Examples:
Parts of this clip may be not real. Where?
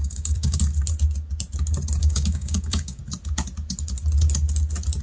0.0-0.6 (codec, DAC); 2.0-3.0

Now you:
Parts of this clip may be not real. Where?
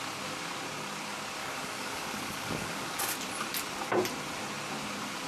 1.4-3.0 (codec, DAC)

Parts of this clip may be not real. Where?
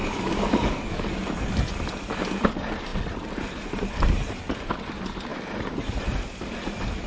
0.0-1.1 (codec, DAC)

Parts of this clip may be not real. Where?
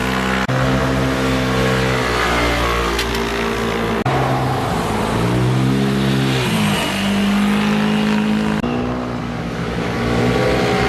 9.2-10.2 (codec, DAC)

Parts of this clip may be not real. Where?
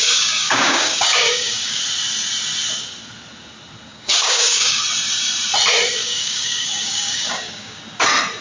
0.0-1.8 (codec, DAC); 3.9-4.8; 6.0-7.8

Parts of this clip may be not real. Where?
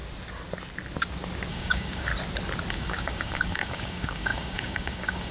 1.5-2.1 (codec, DAC); 2.7-5.3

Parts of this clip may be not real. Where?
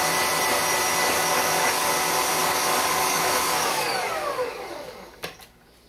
1.0-1.9 (codec, DAC); 2.4-5.4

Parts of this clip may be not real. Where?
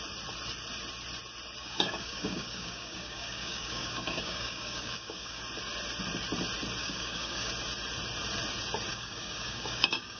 1.6-5.4 (codec, DAC); 6.8-7.5; 8.9-10.2